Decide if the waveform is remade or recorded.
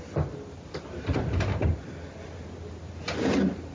recorded